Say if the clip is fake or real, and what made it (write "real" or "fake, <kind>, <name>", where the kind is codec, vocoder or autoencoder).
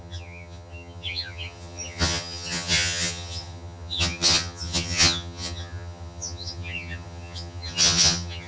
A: fake, vocoder, HiFi-GAN